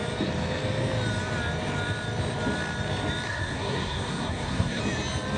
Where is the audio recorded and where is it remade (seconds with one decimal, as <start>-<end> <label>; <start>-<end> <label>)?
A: 0.0-3.3 recorded; 3.3-4.8 remade; 4.8-5.4 recorded